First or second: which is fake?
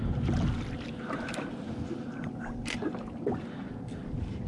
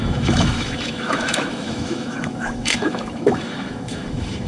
second